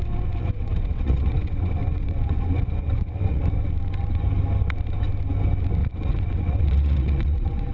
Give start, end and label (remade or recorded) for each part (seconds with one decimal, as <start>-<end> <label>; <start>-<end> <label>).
0.0-0.4 recorded; 0.4-3.4 remade; 3.4-5.8 recorded; 5.8-7.7 remade